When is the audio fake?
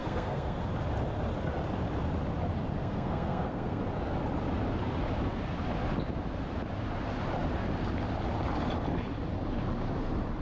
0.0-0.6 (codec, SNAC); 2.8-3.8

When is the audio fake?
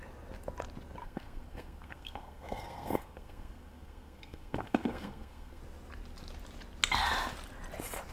1.0-5.6 (codec, SNAC)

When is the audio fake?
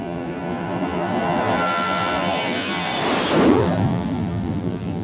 0.0-2.9 (vocoder, BigVGAN v2); 3.5-5.0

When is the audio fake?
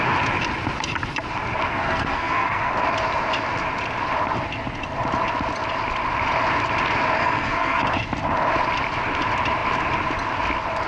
1.7-2.7 (codec, SNAC); 7.2-7.8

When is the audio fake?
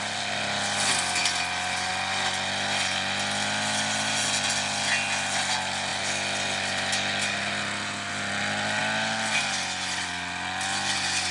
none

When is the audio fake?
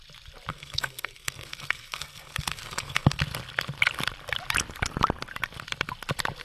0.5-3.2 (codec, SNAC)